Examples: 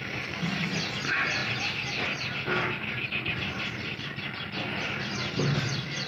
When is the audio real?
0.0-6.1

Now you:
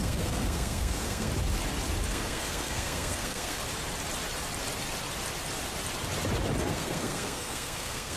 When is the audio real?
1.3-2.1; 3.6-6.7

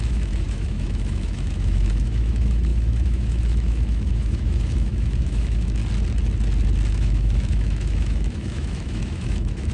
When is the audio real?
5.8-6.9

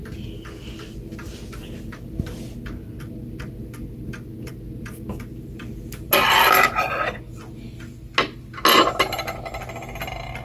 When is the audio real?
0.0-10.4